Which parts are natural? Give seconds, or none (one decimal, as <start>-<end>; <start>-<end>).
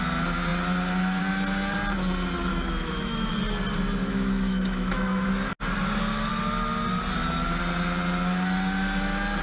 0.0-2.5; 3.3-4.0; 5.3-9.4